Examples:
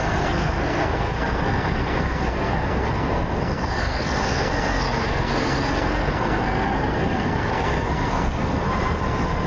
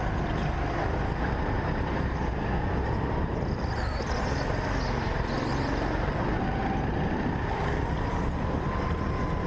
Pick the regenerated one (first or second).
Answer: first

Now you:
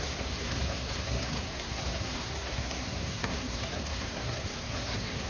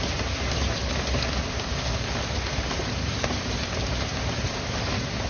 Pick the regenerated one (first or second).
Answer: first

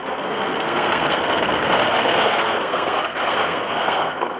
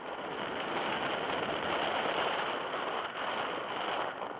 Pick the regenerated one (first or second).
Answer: first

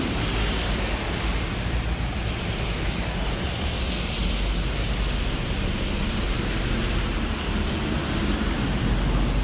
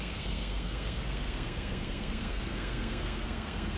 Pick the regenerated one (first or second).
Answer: second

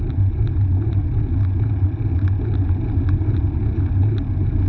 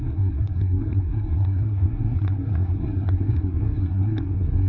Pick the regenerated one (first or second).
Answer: second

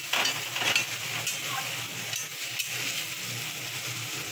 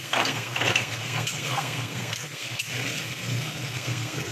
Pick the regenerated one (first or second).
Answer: second